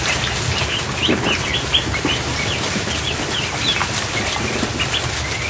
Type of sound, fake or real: real